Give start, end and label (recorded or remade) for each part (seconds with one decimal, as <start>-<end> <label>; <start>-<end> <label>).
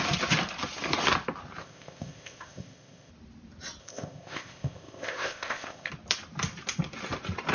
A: 0.0-1.6 recorded; 1.6-3.1 remade; 3.1-3.8 recorded; 3.8-5.9 remade; 5.9-7.5 recorded